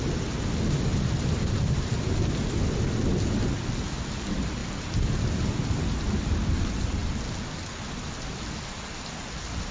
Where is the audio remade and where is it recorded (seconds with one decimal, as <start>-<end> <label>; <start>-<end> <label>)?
0.0-0.9 recorded; 0.9-2.1 remade; 2.1-4.6 recorded; 4.6-5.5 remade; 5.5-9.7 recorded

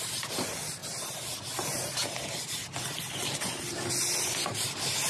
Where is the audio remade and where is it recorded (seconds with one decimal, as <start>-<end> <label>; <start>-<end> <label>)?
0.0-5.1 recorded

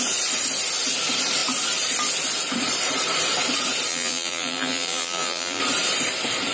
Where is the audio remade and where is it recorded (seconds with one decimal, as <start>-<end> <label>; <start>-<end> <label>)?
0.0-3.9 recorded; 3.9-5.6 remade; 5.6-6.5 recorded

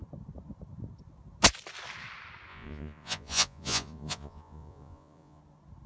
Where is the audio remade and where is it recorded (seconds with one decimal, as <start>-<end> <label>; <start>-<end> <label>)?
0.0-2.5 recorded; 2.5-5.4 remade; 5.4-5.9 recorded